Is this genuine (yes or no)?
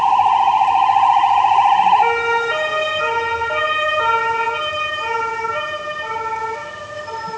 yes